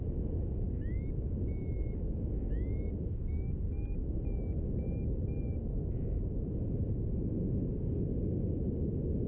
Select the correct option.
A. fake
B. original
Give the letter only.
B